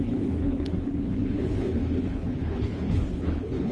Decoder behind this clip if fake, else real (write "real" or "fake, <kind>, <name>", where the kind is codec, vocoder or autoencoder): fake, codec, HILCodec